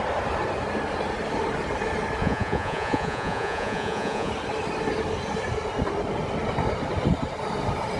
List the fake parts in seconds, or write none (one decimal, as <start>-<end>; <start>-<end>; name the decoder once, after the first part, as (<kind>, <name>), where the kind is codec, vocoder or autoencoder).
2.2-4.3 (vocoder, Vocos)